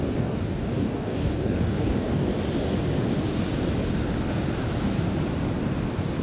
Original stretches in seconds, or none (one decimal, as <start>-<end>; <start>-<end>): 2.2-6.2